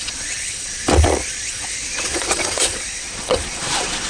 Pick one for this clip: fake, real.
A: fake